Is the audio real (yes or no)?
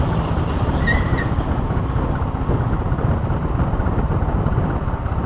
yes